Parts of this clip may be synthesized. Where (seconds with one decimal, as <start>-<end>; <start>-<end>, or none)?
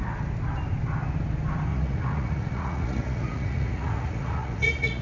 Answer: 1.7-5.0